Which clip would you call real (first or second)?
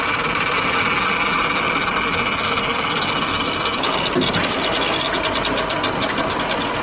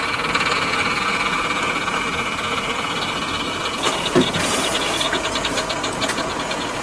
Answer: first